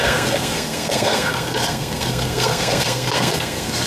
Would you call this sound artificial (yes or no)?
yes